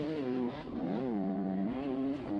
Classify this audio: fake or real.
fake